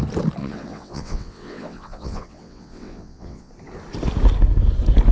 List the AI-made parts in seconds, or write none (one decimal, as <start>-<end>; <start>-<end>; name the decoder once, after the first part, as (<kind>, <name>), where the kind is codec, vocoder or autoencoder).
0.4-3.5 (vocoder, WaveNeXt)